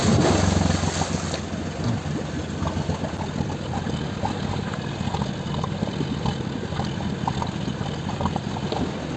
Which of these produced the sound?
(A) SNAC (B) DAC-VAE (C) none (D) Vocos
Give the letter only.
C